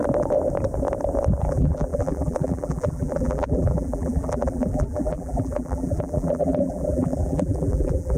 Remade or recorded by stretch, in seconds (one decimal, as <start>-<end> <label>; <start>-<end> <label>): 0.0-1.4 recorded; 1.4-8.2 remade